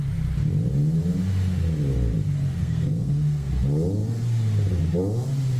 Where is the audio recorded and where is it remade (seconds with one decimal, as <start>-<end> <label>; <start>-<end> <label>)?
0.0-2.6 recorded; 2.6-3.5 remade; 3.5-5.6 recorded